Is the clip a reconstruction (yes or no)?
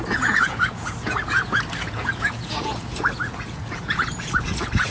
yes